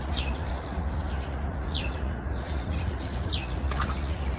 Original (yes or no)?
no